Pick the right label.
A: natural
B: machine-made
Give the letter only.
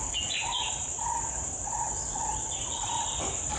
B